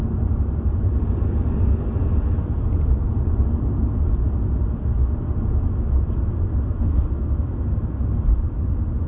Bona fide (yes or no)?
yes